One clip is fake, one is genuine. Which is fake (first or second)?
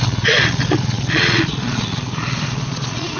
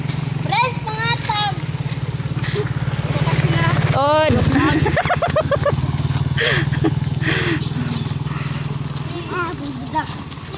first